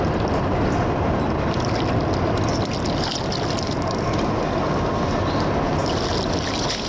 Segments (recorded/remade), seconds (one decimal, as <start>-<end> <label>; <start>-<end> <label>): 0.0-6.9 recorded